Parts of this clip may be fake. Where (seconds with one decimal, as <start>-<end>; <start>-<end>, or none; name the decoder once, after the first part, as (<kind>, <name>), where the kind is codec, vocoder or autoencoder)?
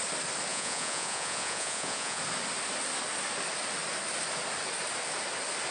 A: 0.5-2.2 (vocoder, Vocos)